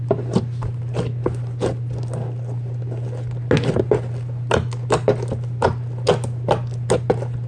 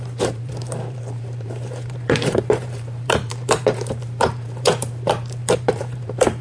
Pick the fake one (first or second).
second